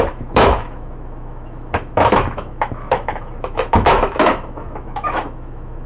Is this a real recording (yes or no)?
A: no